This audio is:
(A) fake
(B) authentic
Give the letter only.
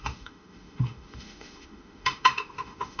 A